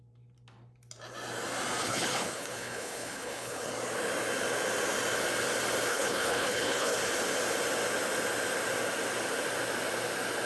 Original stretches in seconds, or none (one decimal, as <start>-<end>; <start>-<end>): 0.0-1.8; 3.7-5.9; 7.0-10.5